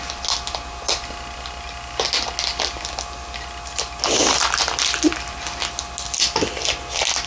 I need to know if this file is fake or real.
real